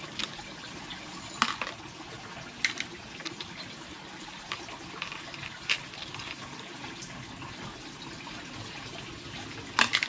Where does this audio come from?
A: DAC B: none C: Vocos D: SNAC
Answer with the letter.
B